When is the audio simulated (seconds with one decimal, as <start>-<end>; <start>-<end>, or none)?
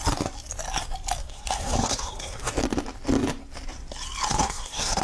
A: 1.2-2.5; 4.4-5.0